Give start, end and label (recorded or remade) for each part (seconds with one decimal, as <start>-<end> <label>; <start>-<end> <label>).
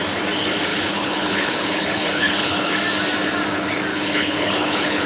0.0-0.7 recorded; 0.7-2.7 remade; 2.7-3.9 recorded; 3.9-5.1 remade